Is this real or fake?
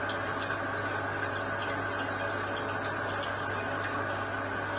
real